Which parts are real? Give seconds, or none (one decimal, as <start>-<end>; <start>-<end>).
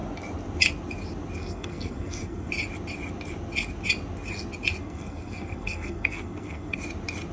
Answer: 0.0-1.4; 2.5-4.8; 6.8-7.3